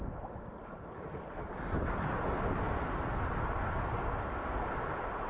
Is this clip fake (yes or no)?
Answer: no